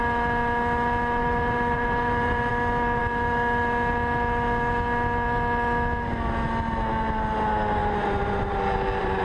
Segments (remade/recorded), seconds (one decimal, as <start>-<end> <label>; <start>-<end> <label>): 0.0-1.2 recorded; 1.2-2.5 remade; 2.5-7.8 recorded; 7.8-9.2 remade